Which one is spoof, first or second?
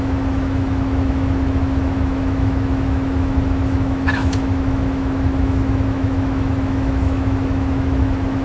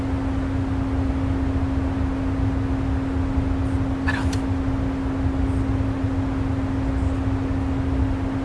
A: first